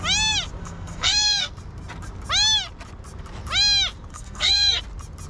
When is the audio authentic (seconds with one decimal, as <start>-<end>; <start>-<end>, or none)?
0.0-0.6; 1.5-4.1; 4.8-5.3